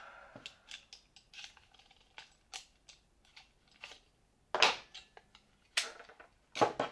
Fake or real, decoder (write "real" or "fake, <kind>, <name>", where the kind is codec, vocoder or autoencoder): real